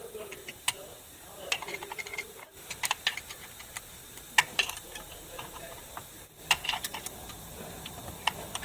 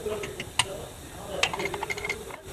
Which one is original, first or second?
second